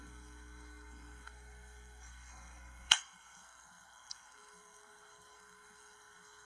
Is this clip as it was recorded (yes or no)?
no